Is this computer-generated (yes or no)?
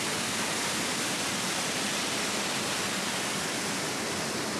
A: no